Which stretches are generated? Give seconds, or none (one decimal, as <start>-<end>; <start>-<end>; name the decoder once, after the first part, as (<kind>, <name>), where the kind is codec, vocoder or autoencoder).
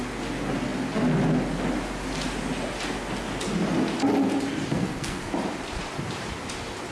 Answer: 4.7-5.3 (codec, SNAC)